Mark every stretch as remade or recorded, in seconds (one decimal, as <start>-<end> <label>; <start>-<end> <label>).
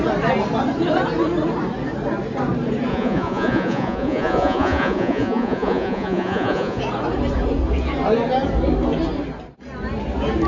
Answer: 0.0-2.9 recorded; 2.9-6.8 remade; 6.8-10.5 recorded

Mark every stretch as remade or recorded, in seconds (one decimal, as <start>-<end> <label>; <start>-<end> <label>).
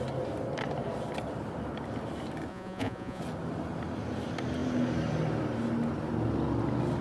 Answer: 0.0-2.5 recorded; 2.5-3.2 remade; 3.2-7.0 recorded